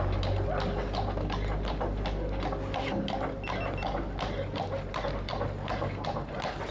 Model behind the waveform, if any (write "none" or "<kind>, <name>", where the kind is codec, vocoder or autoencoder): none